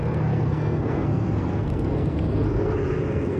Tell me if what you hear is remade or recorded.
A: remade